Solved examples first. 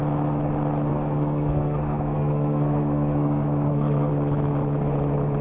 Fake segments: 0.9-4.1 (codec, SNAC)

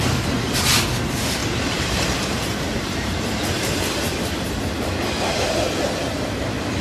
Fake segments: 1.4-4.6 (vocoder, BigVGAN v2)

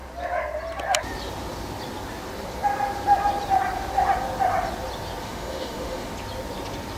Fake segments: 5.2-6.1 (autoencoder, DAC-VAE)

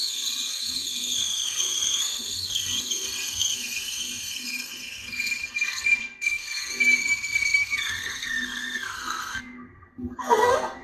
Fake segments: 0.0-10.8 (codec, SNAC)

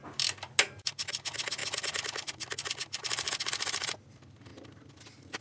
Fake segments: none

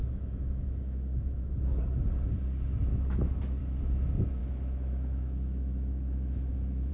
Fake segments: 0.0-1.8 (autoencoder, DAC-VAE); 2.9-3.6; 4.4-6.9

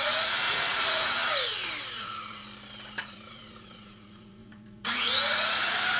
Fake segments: 0.0-1.2 (vocoder, Vocos); 2.0-2.4; 3.0-6.0

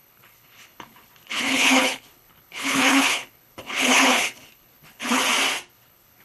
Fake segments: 0.0-5.2 (codec, HILCodec); 5.7-6.2